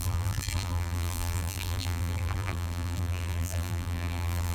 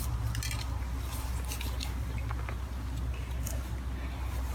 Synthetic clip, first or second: first